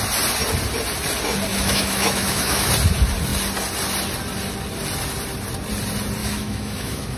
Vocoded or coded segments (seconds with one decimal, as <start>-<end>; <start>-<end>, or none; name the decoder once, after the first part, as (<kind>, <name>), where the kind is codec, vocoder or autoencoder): 1.5-2.7 (autoencoder, DAC-VAE); 6.2-7.2